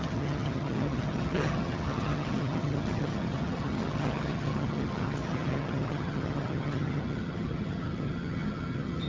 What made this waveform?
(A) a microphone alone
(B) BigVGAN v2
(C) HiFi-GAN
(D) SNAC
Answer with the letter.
C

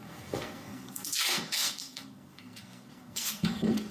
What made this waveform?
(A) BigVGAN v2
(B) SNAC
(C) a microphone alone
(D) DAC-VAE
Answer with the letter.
B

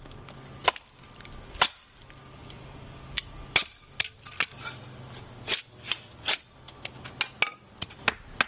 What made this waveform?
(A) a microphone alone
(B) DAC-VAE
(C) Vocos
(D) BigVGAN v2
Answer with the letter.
A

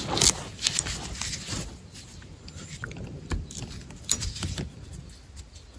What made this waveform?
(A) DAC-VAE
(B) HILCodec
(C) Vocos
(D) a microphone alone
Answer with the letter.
D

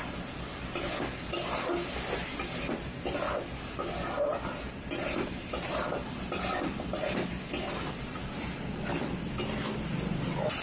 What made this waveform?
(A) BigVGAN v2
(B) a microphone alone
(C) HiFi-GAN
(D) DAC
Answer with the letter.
B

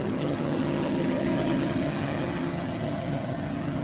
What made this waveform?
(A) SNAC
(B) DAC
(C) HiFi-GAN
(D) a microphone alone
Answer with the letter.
C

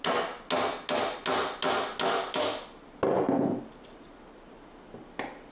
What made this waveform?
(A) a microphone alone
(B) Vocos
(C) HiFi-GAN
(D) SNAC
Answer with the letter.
A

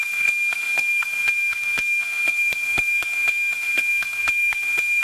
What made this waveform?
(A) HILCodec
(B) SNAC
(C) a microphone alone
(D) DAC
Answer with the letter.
B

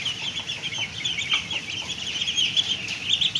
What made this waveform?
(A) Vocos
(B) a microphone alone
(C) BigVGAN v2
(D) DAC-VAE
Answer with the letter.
B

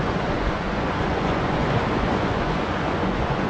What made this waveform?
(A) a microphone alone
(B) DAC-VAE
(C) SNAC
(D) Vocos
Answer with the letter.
D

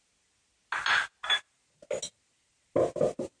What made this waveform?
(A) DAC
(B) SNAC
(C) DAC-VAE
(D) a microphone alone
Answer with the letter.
D